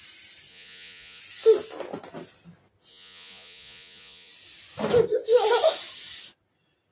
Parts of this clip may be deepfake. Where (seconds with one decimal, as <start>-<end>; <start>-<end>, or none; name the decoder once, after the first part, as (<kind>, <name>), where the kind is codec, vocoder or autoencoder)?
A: 0.5-1.2 (vocoder, Vocos); 2.9-4.3